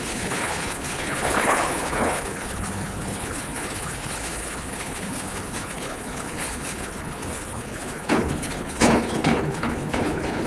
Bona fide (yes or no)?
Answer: no